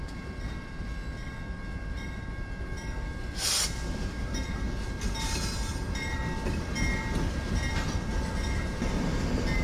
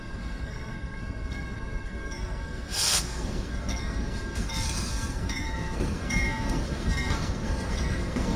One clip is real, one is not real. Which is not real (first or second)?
second